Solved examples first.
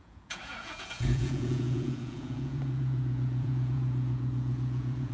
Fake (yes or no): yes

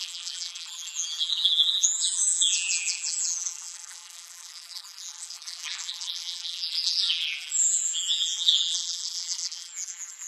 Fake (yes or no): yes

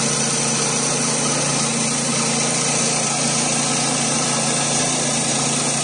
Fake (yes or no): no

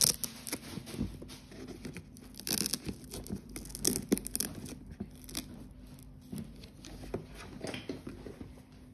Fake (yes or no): no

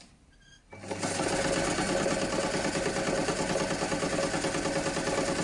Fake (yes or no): no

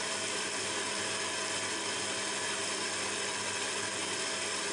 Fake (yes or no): no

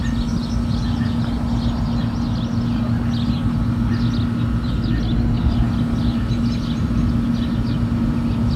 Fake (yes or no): no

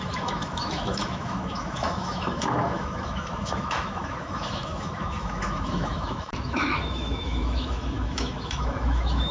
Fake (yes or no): yes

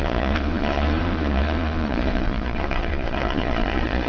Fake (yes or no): yes